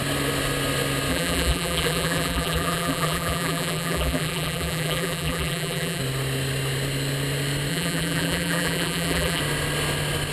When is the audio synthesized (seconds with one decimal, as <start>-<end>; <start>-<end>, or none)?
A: 1.1-6.0; 7.7-9.4